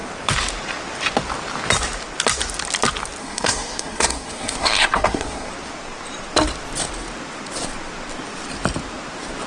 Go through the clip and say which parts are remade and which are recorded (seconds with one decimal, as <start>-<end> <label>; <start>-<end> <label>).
0.0-3.2 recorded; 3.2-5.5 remade; 5.5-9.5 recorded